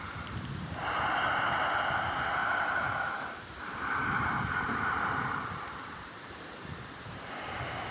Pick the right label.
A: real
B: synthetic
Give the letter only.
B